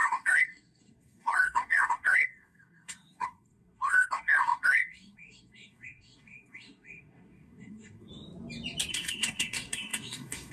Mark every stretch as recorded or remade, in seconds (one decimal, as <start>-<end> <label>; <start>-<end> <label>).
0.0-8.1 remade; 8.1-8.9 recorded; 8.9-10.5 remade